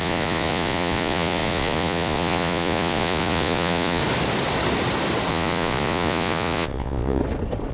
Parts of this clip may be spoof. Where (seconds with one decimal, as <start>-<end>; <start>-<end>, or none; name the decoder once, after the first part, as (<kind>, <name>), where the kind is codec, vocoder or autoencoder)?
0.0-4.0 (vocoder, Vocos); 5.3-7.2